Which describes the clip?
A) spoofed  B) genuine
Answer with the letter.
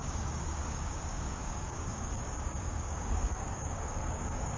A